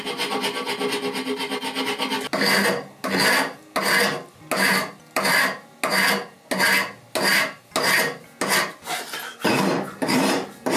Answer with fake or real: real